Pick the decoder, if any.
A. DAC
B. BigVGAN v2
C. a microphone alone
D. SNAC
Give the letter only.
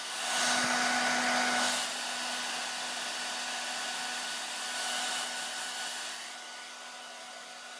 C